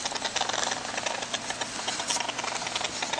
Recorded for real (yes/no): yes